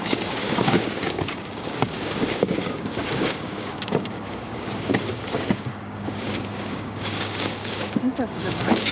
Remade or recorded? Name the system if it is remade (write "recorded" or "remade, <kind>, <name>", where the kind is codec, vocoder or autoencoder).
remade, codec, DAC